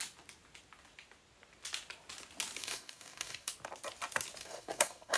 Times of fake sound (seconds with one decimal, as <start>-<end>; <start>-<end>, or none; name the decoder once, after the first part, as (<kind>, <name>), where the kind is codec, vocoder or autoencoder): 2.6-3.5 (codec, DAC); 4.4-5.2